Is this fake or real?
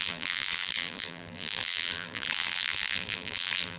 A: fake